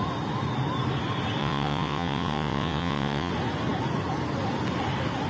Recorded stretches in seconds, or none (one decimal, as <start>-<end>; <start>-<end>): 0.0-1.4; 3.3-5.3